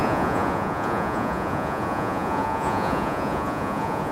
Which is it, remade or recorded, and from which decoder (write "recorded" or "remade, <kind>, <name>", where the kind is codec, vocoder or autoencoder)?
remade, vocoder, Vocos